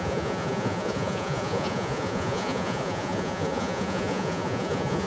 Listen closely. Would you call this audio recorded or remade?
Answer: remade